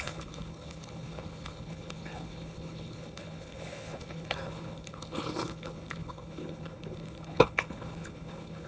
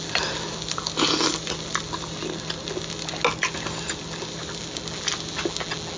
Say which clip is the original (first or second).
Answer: second